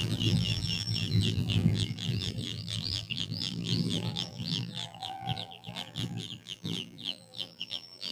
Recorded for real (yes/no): no